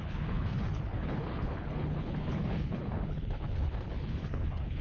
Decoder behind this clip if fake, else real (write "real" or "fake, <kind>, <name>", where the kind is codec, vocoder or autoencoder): fake, codec, HILCodec